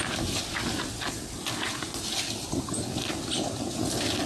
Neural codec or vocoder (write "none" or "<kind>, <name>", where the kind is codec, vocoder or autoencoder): none